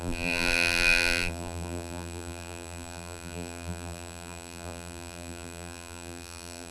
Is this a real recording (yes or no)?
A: no